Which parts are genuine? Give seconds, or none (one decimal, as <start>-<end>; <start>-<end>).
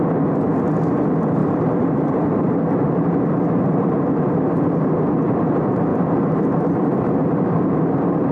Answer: 0.0-1.4; 3.9-5.9